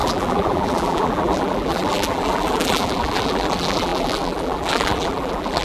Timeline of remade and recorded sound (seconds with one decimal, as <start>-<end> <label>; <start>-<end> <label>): 0.0-5.6 remade